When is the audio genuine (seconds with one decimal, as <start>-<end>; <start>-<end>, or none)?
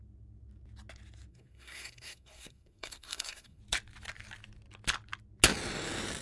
0.0-1.3; 3.6-6.2